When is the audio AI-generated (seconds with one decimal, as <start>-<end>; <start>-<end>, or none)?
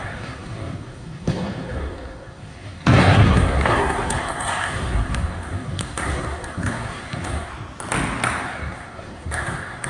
0.0-7.5; 8.4-9.9